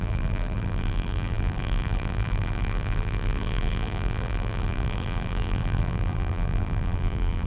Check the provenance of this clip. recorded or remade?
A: remade